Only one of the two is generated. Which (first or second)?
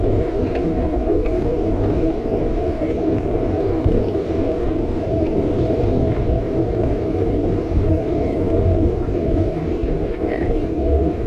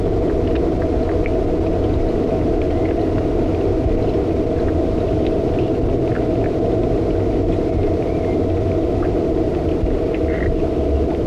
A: first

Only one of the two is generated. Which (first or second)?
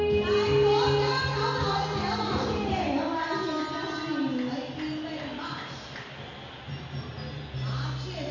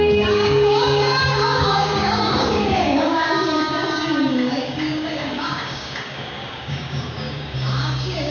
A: second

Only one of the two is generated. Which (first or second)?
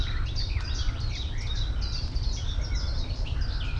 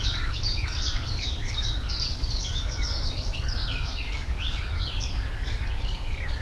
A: second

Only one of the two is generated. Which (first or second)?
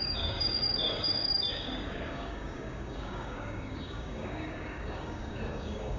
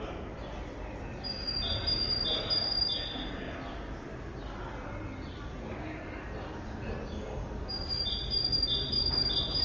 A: first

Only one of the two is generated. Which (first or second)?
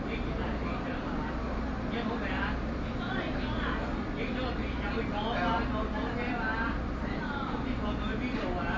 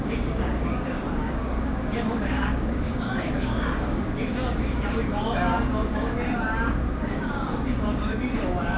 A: second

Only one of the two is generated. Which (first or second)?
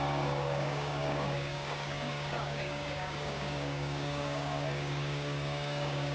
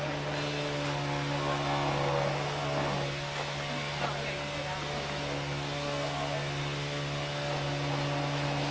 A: first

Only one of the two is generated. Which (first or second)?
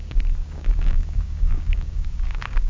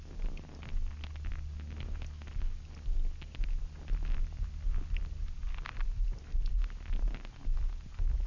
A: first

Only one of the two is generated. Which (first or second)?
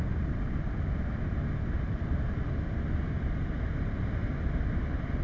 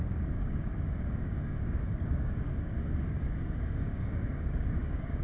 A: second